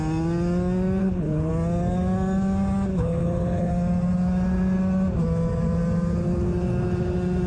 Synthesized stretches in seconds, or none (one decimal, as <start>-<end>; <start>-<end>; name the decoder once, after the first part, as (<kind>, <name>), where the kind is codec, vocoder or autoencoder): 1.0-1.5 (codec, HILCodec); 2.9-3.7